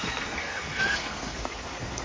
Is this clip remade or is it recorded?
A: remade